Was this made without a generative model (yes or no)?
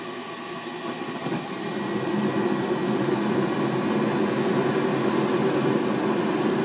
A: yes